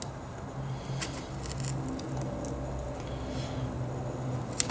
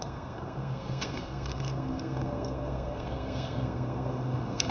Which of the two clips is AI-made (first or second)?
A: second